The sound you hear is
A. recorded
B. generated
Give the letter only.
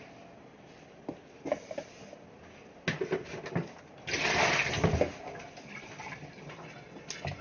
A